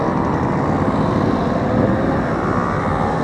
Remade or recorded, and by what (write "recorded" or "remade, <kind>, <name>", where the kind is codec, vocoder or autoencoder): recorded